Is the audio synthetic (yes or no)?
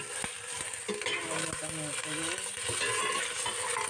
no